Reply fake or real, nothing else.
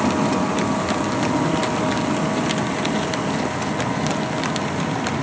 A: real